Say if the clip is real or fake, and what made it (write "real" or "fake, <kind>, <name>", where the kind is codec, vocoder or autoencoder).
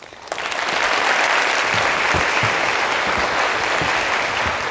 real